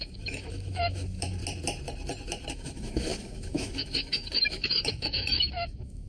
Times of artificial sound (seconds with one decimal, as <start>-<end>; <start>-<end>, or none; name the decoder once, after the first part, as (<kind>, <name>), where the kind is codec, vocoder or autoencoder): 0.0-1.4 (autoencoder, DAC-VAE); 2.5-6.1